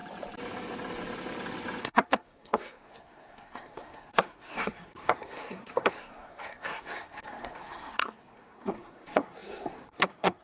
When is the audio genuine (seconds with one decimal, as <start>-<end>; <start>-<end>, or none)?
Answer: 0.0-1.8